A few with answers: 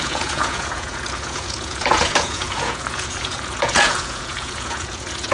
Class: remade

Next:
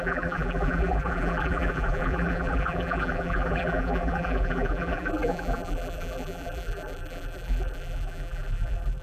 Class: remade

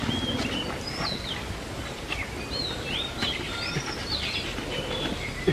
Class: recorded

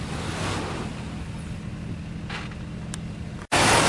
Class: recorded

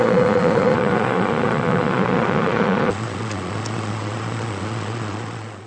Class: remade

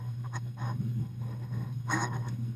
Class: remade